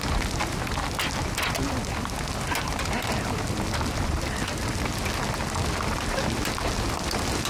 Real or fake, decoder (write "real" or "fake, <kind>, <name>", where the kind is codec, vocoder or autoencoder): real